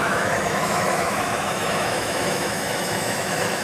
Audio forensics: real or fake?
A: fake